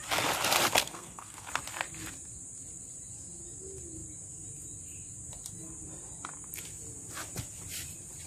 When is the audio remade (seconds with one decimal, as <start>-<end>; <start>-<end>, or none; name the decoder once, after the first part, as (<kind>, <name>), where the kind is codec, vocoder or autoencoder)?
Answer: 0.8-1.5 (codec, SNAC)